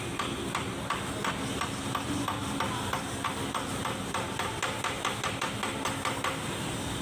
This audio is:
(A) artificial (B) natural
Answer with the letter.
B